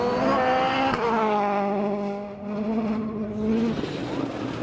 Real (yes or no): yes